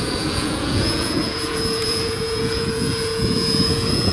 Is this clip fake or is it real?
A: fake